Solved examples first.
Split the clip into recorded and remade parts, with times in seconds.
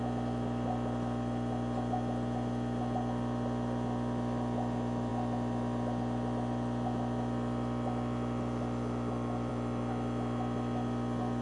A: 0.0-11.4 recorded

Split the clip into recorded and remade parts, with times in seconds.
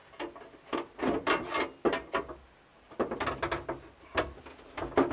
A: 0.0-5.1 recorded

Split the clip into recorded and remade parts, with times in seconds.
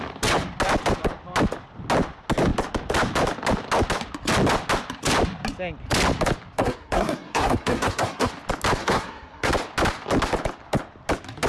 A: 0.0-6.6 recorded; 6.6-8.3 remade; 8.3-8.8 recorded; 8.8-9.5 remade; 9.5-11.5 recorded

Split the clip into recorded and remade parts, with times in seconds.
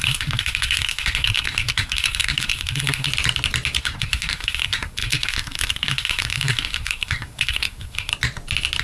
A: 0.0-3.1 remade; 3.1-3.8 recorded; 3.8-8.1 remade; 8.1-8.8 recorded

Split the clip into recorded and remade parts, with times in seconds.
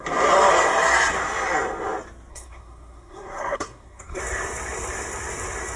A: 0.0-2.3 recorded; 2.3-4.2 remade; 4.2-5.8 recorded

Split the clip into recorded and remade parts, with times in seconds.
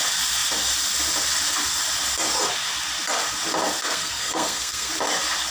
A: 0.0-3.8 recorded; 3.8-4.9 remade; 4.9-5.5 recorded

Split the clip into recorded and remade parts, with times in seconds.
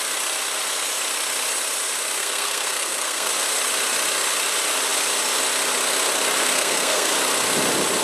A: 0.0-2.2 recorded; 2.2-3.3 remade; 3.3-6.4 recorded; 6.4-7.1 remade; 7.1-8.0 recorded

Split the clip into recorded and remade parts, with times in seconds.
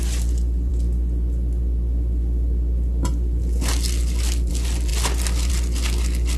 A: 0.0-6.4 recorded